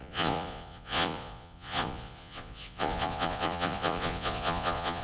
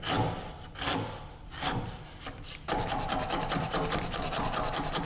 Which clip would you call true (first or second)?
second